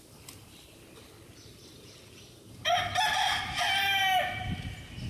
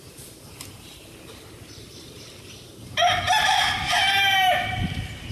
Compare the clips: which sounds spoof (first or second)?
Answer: second